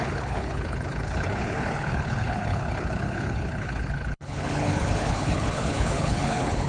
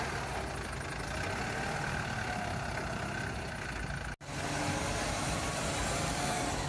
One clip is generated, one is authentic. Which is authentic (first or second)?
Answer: second